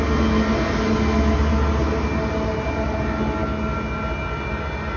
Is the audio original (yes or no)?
yes